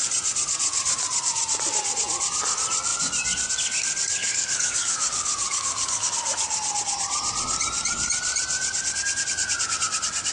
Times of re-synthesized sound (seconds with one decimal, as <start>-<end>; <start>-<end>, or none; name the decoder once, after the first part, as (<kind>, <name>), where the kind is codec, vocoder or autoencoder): 4.2-6.1 (codec, DAC)